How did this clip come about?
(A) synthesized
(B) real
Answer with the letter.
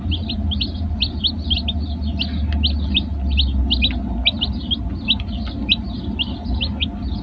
B